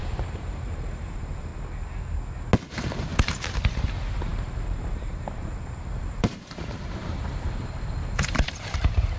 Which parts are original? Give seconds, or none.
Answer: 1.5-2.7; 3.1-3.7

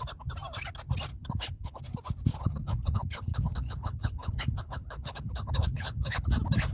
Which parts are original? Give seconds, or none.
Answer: 0.0-1.1; 1.8-2.3; 6.3-6.7

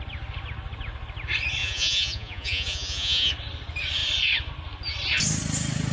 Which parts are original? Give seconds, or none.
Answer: 0.0-1.6; 3.3-5.9

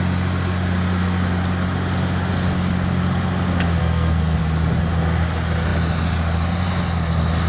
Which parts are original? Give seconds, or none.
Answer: 0.0-3.8; 4.4-7.5

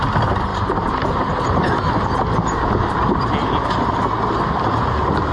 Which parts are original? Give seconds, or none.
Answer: 0.0-0.5; 1.3-5.3

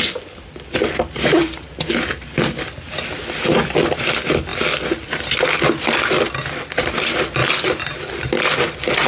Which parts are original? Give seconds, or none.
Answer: 0.0-9.1

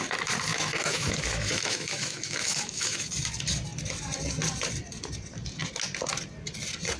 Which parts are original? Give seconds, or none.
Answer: 0.0-0.5; 3.1-7.0